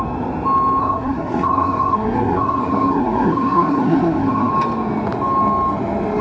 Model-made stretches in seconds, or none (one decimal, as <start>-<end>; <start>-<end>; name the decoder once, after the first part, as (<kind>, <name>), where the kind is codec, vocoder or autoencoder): 0.8-4.5 (codec, SNAC)